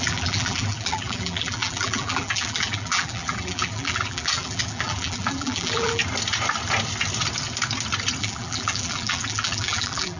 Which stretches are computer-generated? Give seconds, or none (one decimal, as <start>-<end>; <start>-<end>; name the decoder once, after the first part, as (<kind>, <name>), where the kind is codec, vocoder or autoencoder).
0.0-6.0 (vocoder, BigVGAN v2); 8.2-10.2